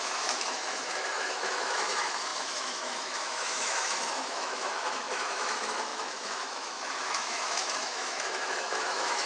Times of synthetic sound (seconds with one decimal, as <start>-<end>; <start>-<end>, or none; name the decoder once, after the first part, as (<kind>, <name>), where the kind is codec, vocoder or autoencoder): 0.0-9.3 (autoencoder, DAC-VAE)